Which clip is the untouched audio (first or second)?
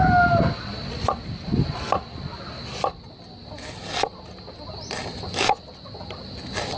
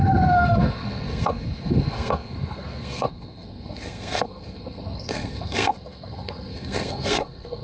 first